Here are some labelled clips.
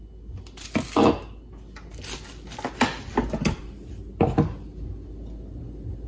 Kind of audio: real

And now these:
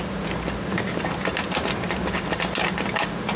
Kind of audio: real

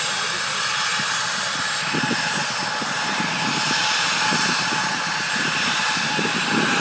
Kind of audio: real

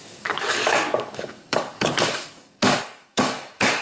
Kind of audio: fake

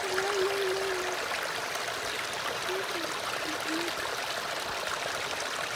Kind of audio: real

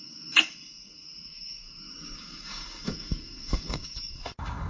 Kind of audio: fake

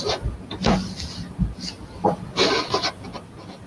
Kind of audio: real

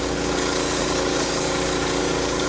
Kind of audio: fake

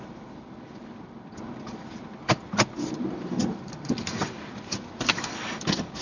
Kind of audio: real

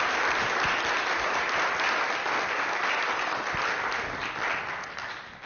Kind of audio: real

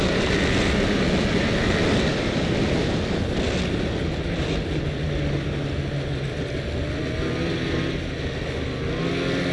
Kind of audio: real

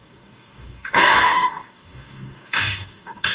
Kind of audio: fake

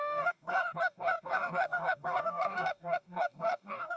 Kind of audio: fake